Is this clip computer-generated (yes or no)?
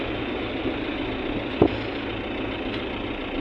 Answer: no